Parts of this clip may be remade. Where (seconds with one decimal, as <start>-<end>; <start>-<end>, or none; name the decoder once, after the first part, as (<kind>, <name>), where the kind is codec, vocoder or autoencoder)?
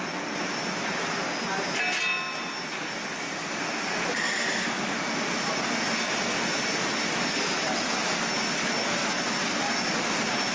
none